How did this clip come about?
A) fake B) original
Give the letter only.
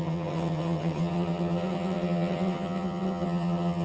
A